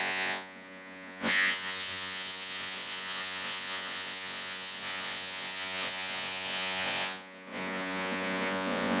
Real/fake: fake